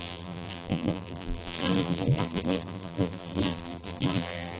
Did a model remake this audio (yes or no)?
yes